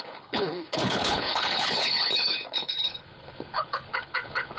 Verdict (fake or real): fake